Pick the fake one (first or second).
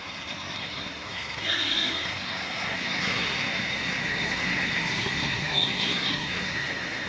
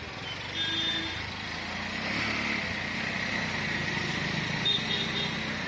first